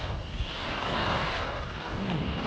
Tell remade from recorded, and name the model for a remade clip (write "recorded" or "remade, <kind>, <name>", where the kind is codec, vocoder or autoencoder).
remade, codec, DAC